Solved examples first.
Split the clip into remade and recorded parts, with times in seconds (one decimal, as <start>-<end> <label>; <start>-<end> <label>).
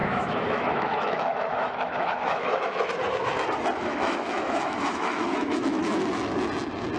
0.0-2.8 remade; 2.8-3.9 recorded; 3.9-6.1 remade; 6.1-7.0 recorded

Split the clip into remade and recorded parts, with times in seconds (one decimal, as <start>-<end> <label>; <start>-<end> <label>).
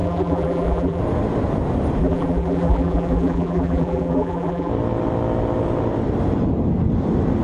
0.0-1.0 remade; 1.0-2.0 recorded; 2.0-4.7 remade; 4.7-7.4 recorded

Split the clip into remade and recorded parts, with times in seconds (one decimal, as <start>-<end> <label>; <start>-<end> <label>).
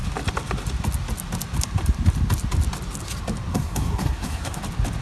0.0-3.5 recorded; 3.5-4.6 remade; 4.6-5.0 recorded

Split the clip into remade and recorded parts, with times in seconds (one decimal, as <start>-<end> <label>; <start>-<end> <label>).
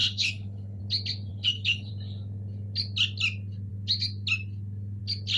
0.0-0.8 remade; 0.8-1.3 recorded; 1.3-1.9 remade; 1.9-5.4 recorded